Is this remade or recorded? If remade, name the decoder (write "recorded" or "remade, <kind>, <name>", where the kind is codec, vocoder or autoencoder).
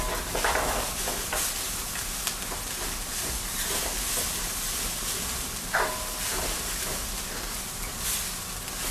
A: remade, vocoder, BigVGAN v2